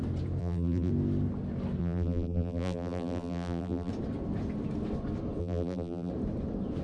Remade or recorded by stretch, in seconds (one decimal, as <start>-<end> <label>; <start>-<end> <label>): 0.0-0.4 recorded; 0.4-0.9 remade; 0.9-1.8 recorded; 1.8-3.9 remade; 3.9-5.4 recorded; 5.4-6.1 remade; 6.1-6.8 recorded